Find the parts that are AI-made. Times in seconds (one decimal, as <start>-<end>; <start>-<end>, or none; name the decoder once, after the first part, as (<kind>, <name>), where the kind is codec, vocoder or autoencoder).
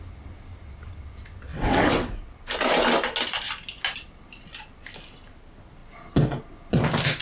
1.5-2.4 (vocoder, WaveNeXt)